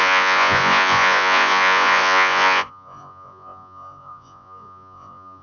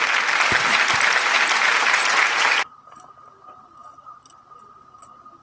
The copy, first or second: first